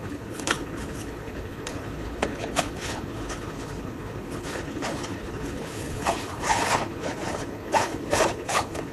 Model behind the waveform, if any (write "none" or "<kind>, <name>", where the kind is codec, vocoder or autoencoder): codec, HILCodec